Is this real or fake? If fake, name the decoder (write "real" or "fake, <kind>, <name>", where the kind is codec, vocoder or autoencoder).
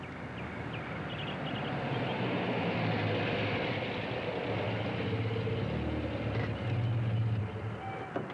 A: real